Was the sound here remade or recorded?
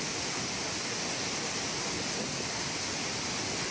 recorded